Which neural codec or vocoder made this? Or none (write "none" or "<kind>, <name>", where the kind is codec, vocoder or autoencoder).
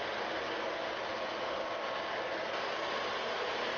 none